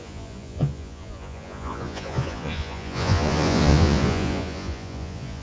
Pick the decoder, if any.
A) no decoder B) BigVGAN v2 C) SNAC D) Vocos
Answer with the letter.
D